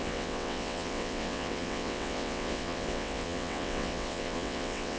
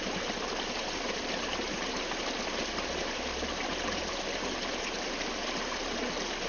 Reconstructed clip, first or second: first